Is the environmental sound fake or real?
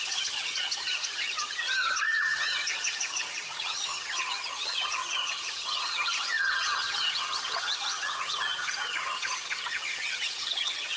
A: fake